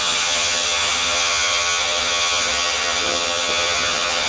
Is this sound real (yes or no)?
no